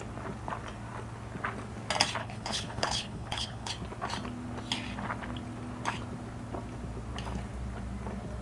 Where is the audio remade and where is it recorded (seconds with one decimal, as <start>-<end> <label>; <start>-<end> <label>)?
0.0-2.2 recorded; 2.2-3.7 remade; 3.7-8.4 recorded

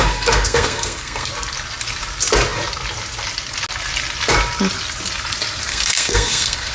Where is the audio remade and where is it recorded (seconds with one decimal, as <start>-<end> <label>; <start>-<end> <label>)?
0.0-1.3 remade; 1.3-5.7 recorded; 5.7-6.7 remade

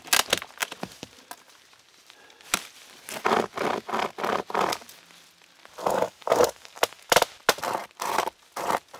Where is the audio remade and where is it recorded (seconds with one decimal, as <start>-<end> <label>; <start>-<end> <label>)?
0.0-5.8 recorded; 5.8-7.1 remade; 7.1-9.0 recorded

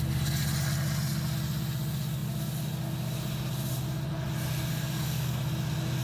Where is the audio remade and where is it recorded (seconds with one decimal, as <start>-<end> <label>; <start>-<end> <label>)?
0.0-4.7 recorded; 4.7-5.4 remade; 5.4-6.0 recorded